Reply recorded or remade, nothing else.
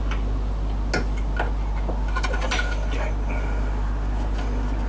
recorded